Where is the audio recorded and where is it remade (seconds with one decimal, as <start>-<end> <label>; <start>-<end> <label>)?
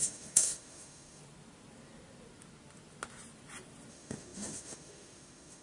0.0-1.2 remade; 1.2-3.9 recorded; 3.9-5.6 remade